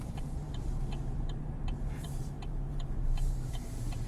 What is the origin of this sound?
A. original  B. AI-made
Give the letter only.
B